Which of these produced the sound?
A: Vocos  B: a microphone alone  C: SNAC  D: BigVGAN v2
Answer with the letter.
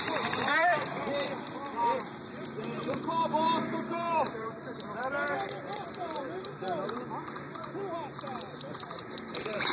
D